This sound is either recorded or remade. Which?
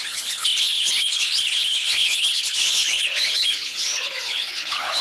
remade